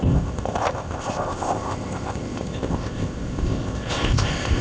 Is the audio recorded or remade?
remade